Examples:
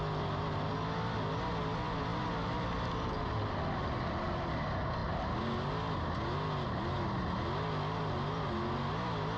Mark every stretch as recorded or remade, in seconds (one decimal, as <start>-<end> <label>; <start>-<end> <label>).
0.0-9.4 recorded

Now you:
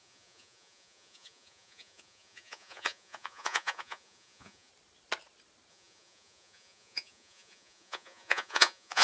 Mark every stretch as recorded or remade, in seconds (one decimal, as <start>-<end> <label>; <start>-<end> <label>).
0.0-4.7 remade; 4.7-5.7 recorded; 5.7-9.0 remade

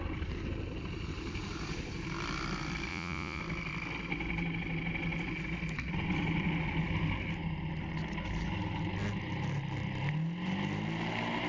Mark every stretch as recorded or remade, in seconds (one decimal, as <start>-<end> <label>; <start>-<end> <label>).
0.0-2.9 recorded; 2.9-3.4 remade; 3.4-11.5 recorded

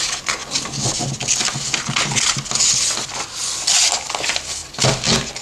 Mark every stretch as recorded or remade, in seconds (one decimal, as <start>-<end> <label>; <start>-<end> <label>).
0.0-5.4 recorded